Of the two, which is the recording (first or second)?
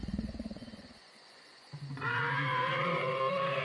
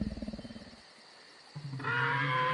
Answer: second